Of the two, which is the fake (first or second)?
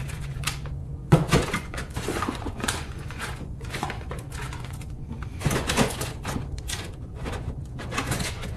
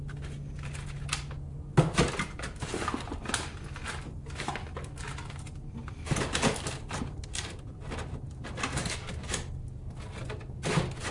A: first